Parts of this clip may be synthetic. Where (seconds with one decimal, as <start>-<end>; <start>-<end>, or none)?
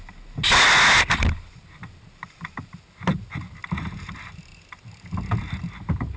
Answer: none